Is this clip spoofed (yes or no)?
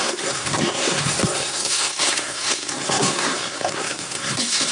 yes